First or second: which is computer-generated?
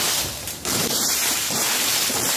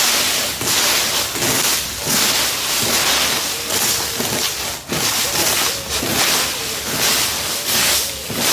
first